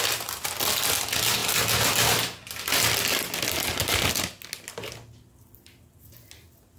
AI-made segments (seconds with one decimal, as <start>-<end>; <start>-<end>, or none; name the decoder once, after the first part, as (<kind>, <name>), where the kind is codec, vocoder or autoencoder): none